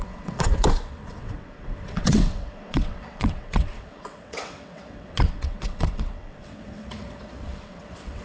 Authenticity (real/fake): fake